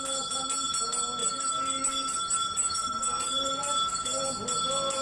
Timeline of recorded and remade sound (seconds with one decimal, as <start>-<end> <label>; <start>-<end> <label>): 0.0-1.2 recorded; 1.2-4.2 remade; 4.2-5.0 recorded